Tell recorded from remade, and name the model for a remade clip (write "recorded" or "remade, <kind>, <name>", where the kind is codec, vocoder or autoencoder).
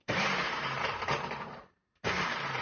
remade, vocoder, BigVGAN v2